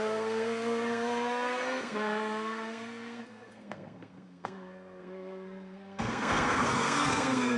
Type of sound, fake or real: fake